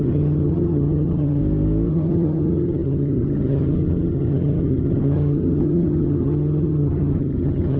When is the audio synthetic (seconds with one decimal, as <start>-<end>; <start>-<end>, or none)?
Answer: 0.0-1.4; 1.9-7.8